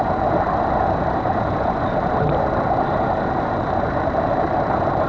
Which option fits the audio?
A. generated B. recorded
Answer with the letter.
B